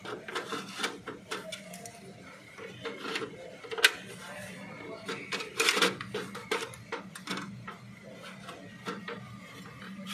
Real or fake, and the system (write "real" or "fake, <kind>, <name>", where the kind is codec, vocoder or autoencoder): real